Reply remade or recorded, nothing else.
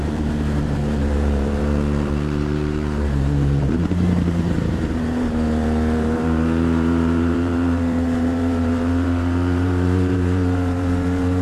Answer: remade